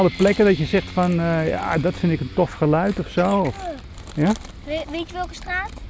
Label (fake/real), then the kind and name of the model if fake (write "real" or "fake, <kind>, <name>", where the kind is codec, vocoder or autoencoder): real